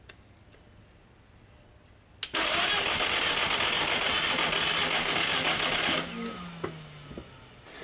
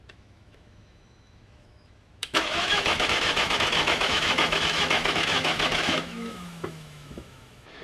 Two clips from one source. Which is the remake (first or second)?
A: second